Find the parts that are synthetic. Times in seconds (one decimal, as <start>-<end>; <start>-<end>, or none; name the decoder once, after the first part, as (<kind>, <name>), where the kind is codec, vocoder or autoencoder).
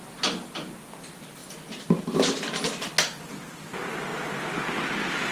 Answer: none